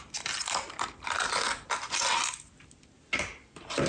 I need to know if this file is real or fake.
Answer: real